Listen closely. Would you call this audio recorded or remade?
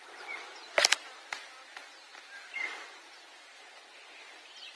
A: recorded